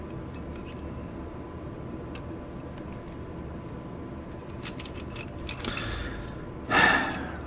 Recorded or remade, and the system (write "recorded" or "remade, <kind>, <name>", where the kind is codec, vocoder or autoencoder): recorded